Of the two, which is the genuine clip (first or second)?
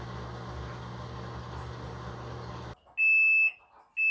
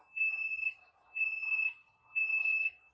first